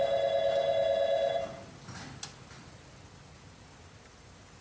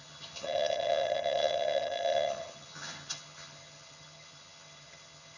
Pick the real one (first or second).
first